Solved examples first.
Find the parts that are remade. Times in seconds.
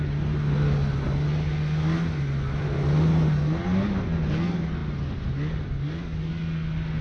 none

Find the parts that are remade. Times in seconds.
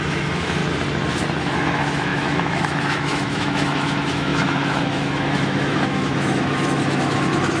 0.0-0.6 (autoencoder, DAC-VAE); 1.4-7.6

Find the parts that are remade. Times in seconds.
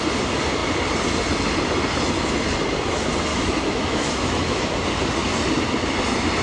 3.3-4.7 (autoencoder, DAC-VAE)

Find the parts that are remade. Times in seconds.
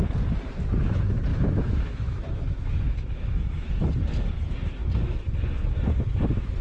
1.3-3.7 (autoencoder, DAC-VAE)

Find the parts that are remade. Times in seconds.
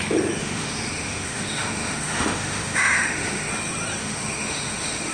0.4-3.5 (autoencoder, DAC-VAE); 4.0-5.1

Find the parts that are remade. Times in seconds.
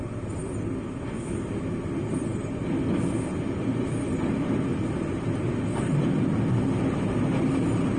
none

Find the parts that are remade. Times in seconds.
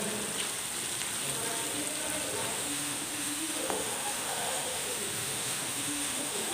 2.5-6.5 (autoencoder, DAC-VAE)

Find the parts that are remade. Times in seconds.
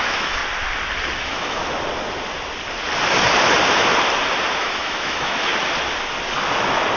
0.0-0.4 (autoencoder, DAC-VAE); 1.2-1.6; 4.6-5.5